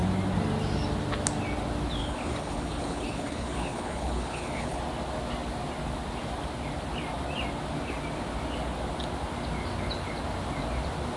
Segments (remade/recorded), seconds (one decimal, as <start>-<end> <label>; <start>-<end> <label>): 0.0-2.0 recorded; 2.0-4.8 remade; 4.8-11.2 recorded